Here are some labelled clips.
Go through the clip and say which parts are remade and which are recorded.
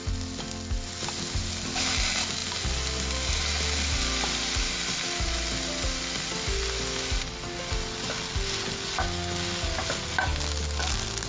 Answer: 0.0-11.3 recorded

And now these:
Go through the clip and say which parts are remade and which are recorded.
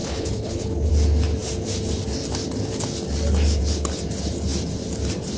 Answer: 0.0-0.9 remade; 0.9-5.4 recorded